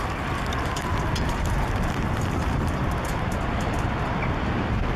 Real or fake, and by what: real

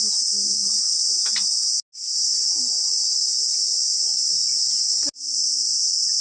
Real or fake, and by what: real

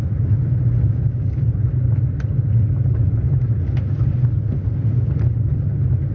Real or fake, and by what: real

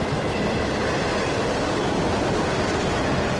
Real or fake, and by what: real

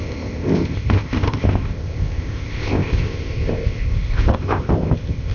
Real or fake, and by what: fake, codec, ZipCodec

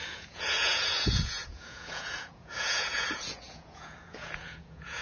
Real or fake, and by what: fake, vocoder, Vocos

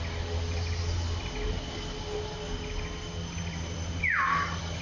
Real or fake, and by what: real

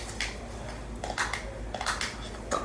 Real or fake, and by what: real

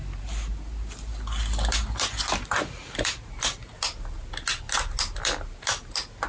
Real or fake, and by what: real